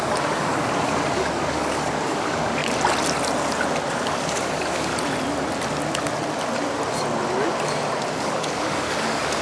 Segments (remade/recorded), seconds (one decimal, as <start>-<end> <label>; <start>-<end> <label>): 0.0-2.6 remade; 2.6-3.9 recorded; 3.9-4.9 remade; 4.9-8.1 recorded; 8.1-9.4 remade